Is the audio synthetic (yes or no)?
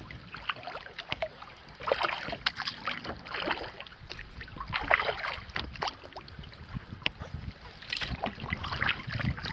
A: no